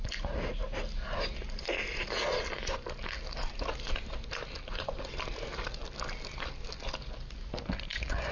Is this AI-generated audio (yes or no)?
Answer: no